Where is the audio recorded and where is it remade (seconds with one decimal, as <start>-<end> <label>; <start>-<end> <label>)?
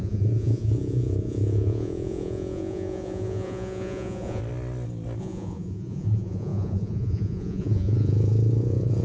0.0-4.4 remade; 4.4-5.2 recorded; 5.2-9.0 remade